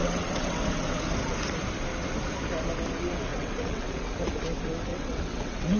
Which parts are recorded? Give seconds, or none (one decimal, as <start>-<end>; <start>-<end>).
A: 0.6-3.3; 4.2-4.9